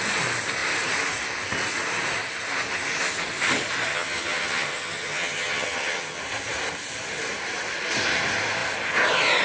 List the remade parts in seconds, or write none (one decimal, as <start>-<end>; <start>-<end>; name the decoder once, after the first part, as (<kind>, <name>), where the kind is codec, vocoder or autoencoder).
3.9-6.2 (vocoder, HiFi-GAN)